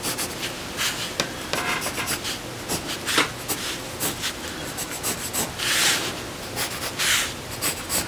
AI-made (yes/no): no